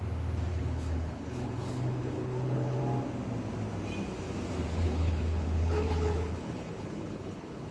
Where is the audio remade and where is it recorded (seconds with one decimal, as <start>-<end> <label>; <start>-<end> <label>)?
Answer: 0.0-0.5 recorded; 0.5-2.8 remade; 2.8-4.7 recorded; 4.7-7.7 remade